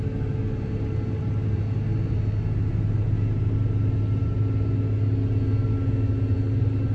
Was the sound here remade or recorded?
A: recorded